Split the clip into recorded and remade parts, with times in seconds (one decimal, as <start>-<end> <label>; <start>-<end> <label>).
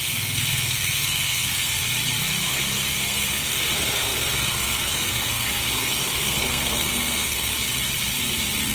0.0-1.8 remade; 1.8-2.5 recorded; 2.5-7.5 remade; 7.5-8.7 recorded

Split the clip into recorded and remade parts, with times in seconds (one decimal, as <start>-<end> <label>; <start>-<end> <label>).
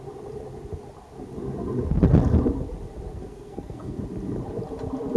0.0-3.1 recorded; 3.1-4.0 remade; 4.0-5.2 recorded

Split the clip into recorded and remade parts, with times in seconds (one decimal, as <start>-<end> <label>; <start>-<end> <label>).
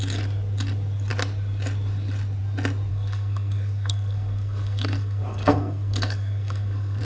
0.0-2.9 recorded; 2.9-7.0 remade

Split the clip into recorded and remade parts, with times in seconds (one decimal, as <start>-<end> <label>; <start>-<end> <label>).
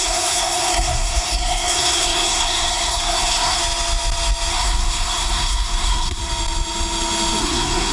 0.0-3.6 remade; 3.6-4.5 recorded; 4.5-6.2 remade; 6.2-7.4 recorded; 7.4-7.9 remade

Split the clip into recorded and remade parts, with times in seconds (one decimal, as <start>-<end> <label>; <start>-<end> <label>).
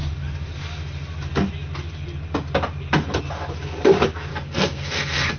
0.0-4.3 recorded; 4.3-5.4 remade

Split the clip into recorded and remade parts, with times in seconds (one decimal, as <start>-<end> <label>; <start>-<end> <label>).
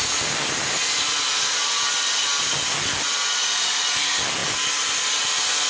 0.0-5.7 recorded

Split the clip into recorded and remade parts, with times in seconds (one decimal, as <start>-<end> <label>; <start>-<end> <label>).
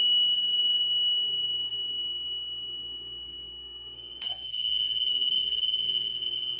0.0-6.6 remade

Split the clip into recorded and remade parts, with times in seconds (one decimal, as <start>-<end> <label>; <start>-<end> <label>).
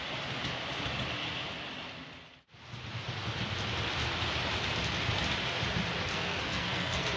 0.0-6.1 recorded; 6.1-7.2 remade